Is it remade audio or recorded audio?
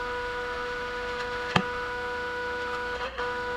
remade